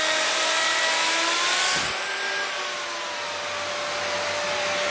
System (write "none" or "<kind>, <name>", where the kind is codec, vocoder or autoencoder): none